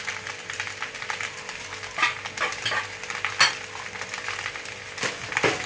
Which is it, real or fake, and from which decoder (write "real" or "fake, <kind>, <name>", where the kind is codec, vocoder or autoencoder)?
real